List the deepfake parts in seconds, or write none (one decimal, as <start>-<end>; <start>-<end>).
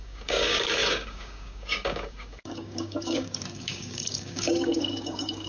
0.0-5.5